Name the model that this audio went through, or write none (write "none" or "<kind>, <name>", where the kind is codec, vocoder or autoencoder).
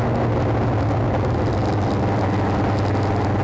none